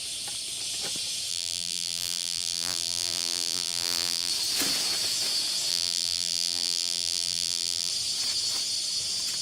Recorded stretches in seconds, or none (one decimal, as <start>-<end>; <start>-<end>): 0.0-1.3; 4.3-5.7; 7.9-9.4